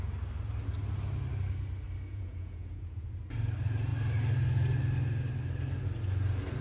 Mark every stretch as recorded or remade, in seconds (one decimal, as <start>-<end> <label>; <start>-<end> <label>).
0.0-2.1 recorded; 2.1-3.1 remade; 3.1-6.6 recorded